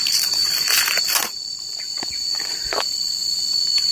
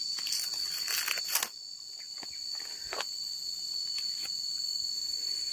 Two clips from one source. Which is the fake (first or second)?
first